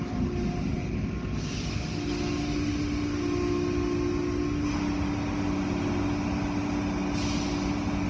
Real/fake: real